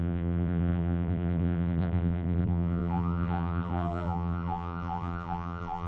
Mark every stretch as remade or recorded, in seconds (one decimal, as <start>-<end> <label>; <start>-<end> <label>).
0.0-5.9 remade